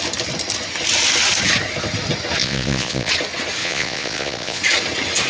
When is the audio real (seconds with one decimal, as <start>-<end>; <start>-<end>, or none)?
0.0-2.4; 3.1-3.6; 4.6-5.3